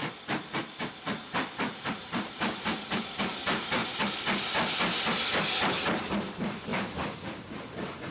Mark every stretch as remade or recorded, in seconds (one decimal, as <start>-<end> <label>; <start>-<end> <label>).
0.0-1.0 recorded; 1.0-3.8 remade; 3.8-6.1 recorded; 6.1-8.1 remade